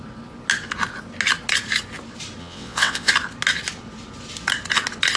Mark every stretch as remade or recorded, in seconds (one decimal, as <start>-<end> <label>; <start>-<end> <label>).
0.0-2.4 recorded; 2.4-3.1 remade; 3.1-5.2 recorded